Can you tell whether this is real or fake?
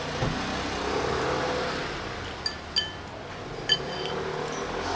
real